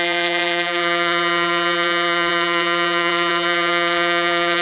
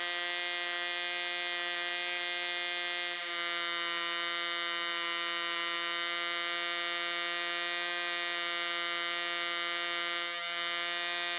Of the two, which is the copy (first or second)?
first